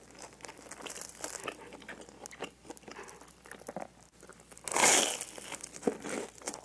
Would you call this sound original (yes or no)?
yes